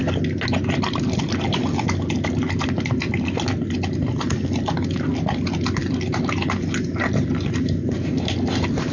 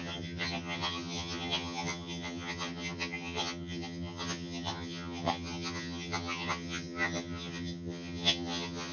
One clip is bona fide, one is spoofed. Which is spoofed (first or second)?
second